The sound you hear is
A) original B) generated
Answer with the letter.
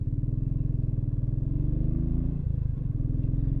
A